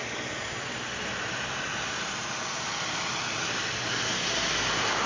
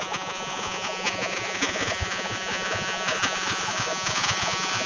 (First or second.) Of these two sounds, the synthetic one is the second